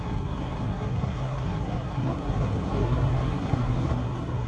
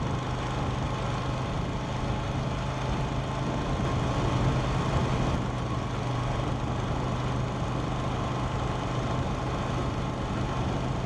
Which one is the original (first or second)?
second